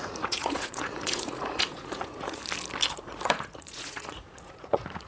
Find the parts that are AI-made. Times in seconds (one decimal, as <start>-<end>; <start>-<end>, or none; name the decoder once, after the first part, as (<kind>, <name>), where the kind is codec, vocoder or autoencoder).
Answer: 0.0-2.4 (vocoder, Vocos); 2.9-5.1